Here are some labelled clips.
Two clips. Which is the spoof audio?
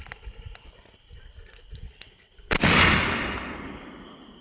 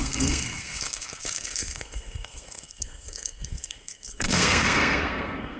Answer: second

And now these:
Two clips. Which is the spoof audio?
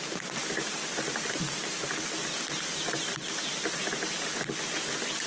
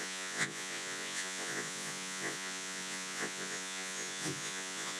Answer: second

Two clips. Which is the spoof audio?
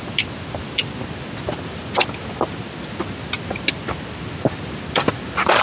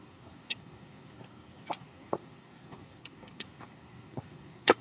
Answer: second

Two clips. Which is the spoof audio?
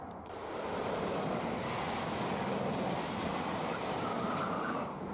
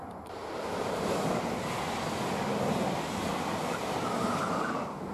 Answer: first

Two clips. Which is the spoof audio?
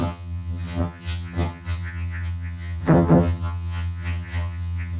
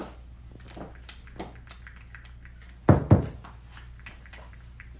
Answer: first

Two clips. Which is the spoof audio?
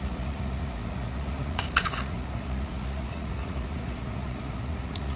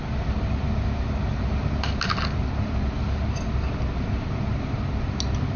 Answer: first